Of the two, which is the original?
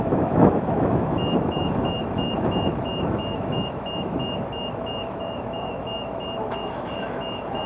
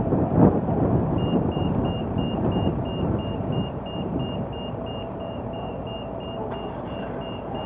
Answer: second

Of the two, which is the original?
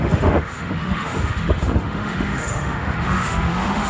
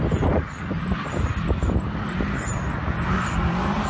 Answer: second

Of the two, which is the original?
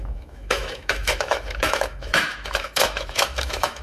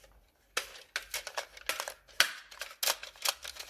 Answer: second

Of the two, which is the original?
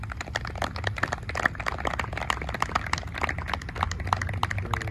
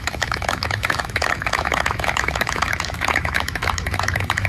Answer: first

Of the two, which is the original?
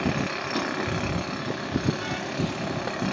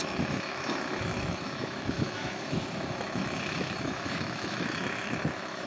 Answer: first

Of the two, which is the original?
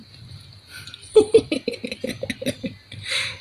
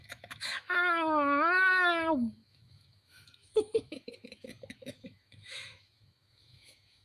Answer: first